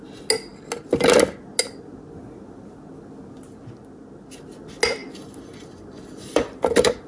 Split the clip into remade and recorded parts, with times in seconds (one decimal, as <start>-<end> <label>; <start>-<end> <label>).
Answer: 0.0-5.0 recorded; 5.0-7.1 remade